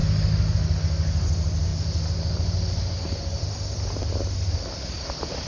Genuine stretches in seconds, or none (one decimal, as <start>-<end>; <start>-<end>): 0.0-5.5